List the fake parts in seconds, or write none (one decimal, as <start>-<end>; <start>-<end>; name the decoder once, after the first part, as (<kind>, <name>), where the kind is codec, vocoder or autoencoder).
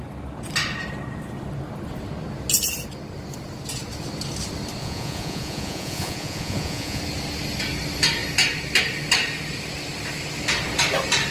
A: 4.8-7.0 (vocoder, Vocos)